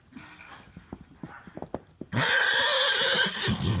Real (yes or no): yes